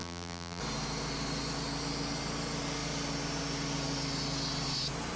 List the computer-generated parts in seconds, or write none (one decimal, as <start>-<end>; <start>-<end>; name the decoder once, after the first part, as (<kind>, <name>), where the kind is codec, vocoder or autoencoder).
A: 0.0-0.6 (vocoder, BigVGAN v2)

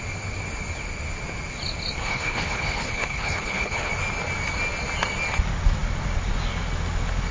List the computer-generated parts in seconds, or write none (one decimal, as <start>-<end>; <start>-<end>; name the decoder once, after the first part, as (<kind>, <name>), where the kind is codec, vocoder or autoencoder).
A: 2.0-3.9 (codec, HILCodec)

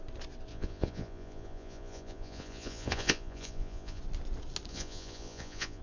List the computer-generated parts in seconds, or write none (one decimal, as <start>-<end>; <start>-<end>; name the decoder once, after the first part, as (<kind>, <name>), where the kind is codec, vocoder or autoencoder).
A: 0.5-4.0 (vocoder, Vocos); 4.7-5.8

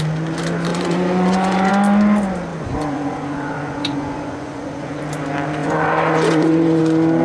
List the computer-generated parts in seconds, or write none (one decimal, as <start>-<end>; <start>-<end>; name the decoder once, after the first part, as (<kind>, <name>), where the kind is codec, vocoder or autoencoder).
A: 0.7-1.7 (vocoder, Vocos); 2.5-5.0; 5.6-6.8

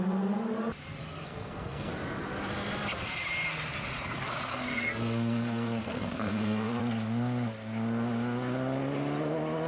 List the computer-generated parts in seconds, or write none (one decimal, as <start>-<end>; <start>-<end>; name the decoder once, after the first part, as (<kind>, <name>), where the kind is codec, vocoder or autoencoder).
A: 1.0-1.9 (codec, SNAC); 4.5-6.8

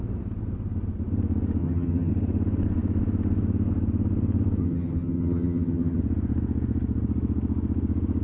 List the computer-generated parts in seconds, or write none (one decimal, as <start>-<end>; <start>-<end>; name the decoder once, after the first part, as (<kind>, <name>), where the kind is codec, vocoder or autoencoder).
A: 1.6-2.1 (vocoder, HiFi-GAN); 4.6-6.0